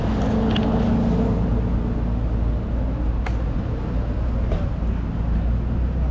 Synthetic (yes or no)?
no